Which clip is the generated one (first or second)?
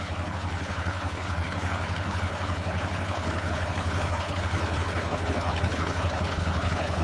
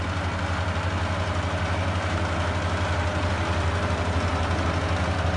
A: first